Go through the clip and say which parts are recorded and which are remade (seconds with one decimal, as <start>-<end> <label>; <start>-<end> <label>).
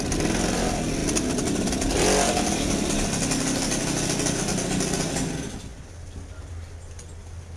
0.0-7.6 recorded